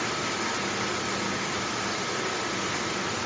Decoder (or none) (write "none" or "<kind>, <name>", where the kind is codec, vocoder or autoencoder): none